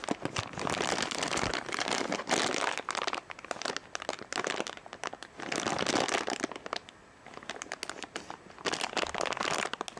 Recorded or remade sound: recorded